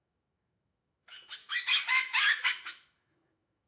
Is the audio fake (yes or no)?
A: yes